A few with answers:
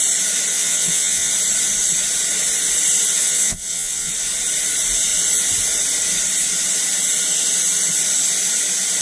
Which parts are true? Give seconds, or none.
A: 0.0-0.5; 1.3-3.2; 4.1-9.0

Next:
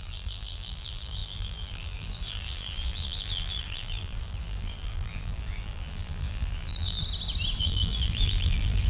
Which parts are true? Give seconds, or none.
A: 7.0-7.6

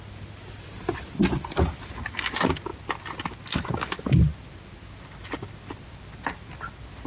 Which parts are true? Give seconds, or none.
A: 0.0-7.1

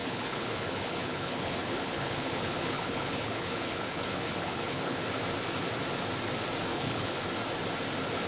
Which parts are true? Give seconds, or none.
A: 5.0-6.7; 7.2-8.3

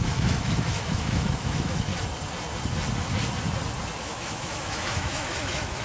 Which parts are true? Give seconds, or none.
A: 1.9-4.0

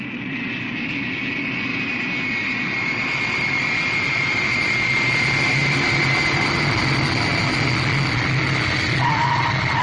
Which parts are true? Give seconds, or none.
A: 0.0-1.7; 5.1-5.6; 6.6-9.8

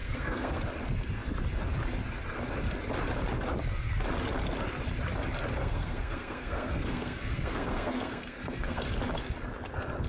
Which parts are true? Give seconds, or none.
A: 0.6-5.6; 8.8-10.1